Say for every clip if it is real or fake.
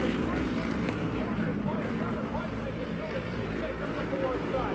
fake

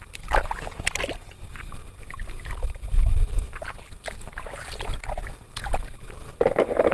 fake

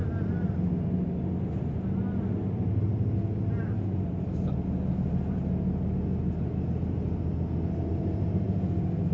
real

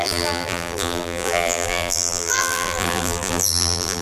fake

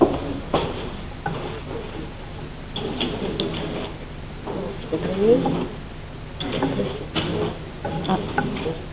real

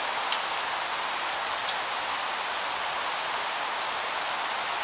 fake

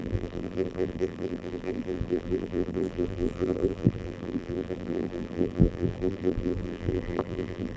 fake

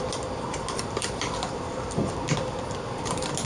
fake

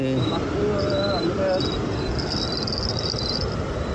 real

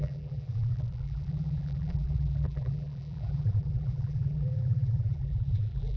fake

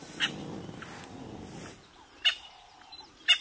real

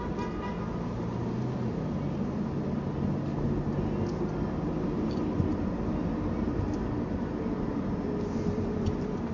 real